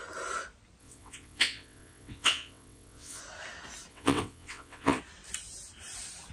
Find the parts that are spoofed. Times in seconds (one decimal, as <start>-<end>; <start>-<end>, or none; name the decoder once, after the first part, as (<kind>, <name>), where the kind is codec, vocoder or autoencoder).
0.8-3.2 (vocoder, WaveNeXt); 3.9-5.0

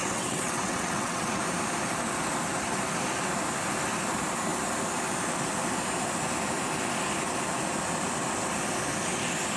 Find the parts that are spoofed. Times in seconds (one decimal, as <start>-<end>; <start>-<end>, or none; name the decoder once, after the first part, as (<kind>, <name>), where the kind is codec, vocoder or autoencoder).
0.0-1.4 (vocoder, WaveNeXt)

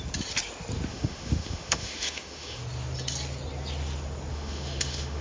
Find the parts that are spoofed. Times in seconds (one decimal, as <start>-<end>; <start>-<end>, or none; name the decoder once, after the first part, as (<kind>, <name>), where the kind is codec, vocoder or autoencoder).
0.9-2.6 (autoencoder, DAC-VAE); 4.3-5.2

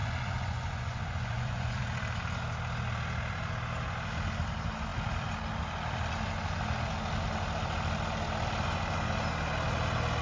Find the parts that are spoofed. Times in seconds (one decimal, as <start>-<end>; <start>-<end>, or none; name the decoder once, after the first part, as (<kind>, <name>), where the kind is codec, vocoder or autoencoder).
0.0-1.8 (vocoder, Vocos)

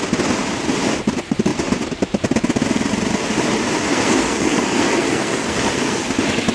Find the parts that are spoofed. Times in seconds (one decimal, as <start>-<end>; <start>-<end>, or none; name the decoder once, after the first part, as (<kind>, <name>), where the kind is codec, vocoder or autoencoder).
3.9-6.1 (codec, SNAC)

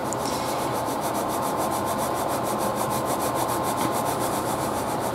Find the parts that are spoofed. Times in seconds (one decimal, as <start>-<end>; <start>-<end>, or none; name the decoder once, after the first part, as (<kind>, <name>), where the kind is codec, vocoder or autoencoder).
0.0-5.1 (vocoder, BigVGAN v2)

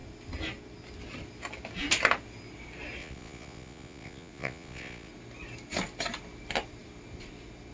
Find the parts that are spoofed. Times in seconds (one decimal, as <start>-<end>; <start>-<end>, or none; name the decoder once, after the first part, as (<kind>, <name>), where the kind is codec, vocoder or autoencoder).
3.0-5.1 (vocoder, Vocos)

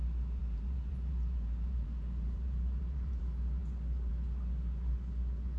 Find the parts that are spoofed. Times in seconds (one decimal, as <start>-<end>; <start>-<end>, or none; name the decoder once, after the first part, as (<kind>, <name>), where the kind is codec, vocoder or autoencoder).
0.4-3.2 (vocoder, BigVGAN v2)